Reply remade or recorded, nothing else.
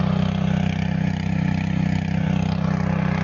recorded